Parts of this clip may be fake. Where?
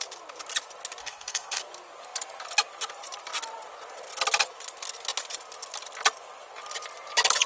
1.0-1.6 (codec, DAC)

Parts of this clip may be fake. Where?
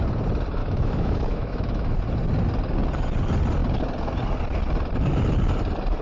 0.6-2.0 (autoencoder, DAC-VAE)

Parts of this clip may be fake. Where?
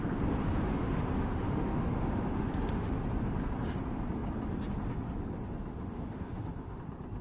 0.4-0.9 (autoencoder, DAC-VAE); 1.3-2.9; 5.7-6.8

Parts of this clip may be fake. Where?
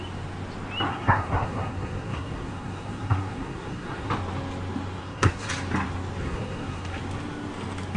0.9-4.1 (codec, SNAC); 5.0-5.5; 6.2-7.0